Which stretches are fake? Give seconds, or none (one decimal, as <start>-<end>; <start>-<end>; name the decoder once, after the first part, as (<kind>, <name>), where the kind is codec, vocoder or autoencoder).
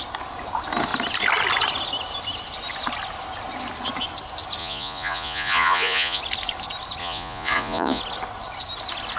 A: 4.6-6.2 (vocoder, Vocos); 7.0-8.0